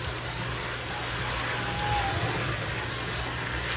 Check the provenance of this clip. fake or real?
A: real